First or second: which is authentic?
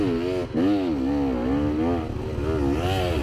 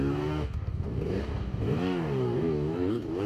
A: first